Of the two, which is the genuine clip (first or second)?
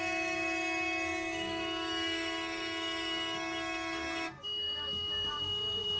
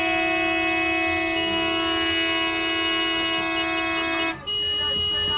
second